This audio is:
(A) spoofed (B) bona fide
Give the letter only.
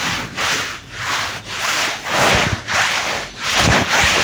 B